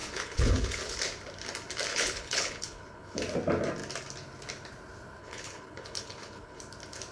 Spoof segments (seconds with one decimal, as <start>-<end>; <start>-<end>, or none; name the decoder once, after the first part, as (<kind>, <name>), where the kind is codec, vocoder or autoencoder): 0.0-1.0 (codec, HILCodec); 1.9-3.2; 5.2-6.6